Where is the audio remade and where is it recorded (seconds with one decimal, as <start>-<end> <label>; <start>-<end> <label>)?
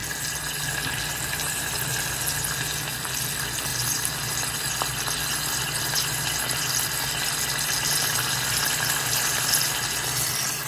0.0-10.7 recorded